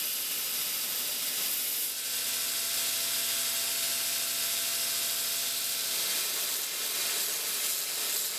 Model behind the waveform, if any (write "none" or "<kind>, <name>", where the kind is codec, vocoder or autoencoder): none